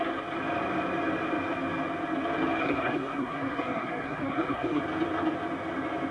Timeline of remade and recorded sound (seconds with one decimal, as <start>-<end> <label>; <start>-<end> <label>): 0.0-2.6 recorded; 2.6-4.8 remade; 4.8-6.1 recorded